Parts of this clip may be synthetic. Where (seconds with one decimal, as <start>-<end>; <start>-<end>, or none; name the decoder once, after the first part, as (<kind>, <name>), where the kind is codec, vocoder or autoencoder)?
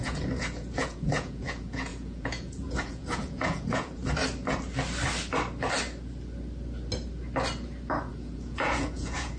0.0-4.0 (vocoder, Vocos); 8.1-9.4